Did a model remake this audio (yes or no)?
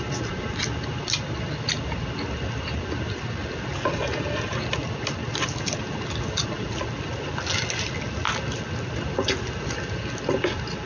no